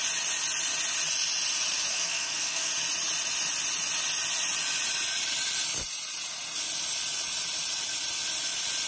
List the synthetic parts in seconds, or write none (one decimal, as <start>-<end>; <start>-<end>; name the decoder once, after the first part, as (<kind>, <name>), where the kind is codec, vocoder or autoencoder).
1.9-2.7 (codec, SNAC)